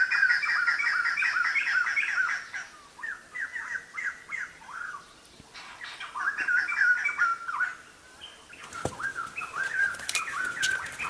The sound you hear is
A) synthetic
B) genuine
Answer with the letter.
B